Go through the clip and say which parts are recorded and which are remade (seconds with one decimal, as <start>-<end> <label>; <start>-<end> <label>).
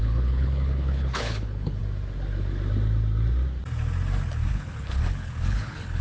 0.0-1.8 remade; 1.8-4.5 recorded; 4.5-6.0 remade